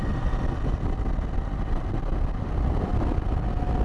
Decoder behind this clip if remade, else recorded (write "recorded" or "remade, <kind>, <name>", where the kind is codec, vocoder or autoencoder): recorded